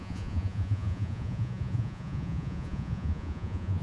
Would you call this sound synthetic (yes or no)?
yes